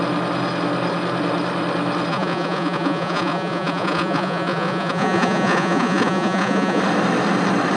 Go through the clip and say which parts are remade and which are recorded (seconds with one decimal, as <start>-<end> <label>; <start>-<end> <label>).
0.0-2.1 recorded; 2.1-6.8 remade; 6.8-7.8 recorded